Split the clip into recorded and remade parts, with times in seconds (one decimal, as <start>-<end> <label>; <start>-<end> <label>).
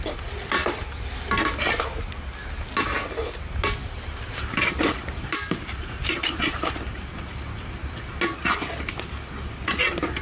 0.0-3.8 recorded; 3.8-8.1 remade; 8.1-10.2 recorded